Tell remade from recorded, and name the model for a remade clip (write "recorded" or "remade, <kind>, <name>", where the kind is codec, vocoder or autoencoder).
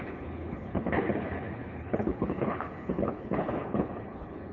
remade, codec, HILCodec